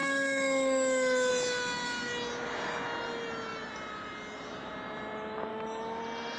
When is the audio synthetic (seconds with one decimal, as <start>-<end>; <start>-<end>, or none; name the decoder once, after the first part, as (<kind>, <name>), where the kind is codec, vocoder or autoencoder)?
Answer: 0.0-1.3 (autoencoder, DAC-VAE); 5.5-6.0